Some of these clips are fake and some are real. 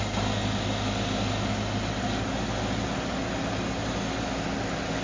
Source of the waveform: real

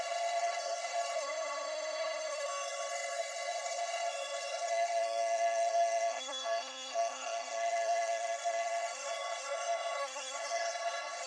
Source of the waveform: fake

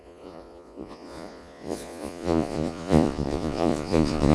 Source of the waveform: fake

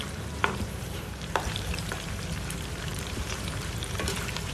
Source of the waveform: fake